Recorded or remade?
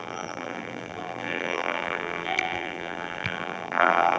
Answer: remade